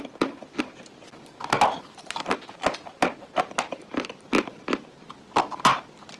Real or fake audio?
real